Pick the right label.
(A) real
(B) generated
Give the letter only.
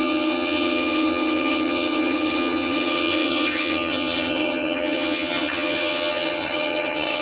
B